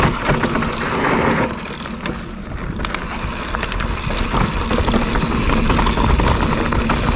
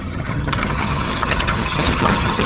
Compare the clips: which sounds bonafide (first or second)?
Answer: first